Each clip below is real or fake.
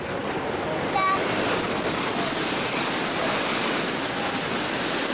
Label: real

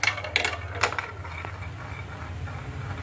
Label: real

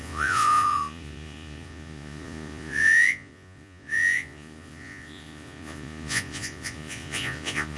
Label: fake